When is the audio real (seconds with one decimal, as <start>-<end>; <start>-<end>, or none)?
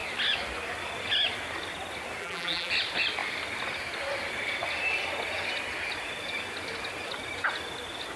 0.0-2.2; 2.7-8.2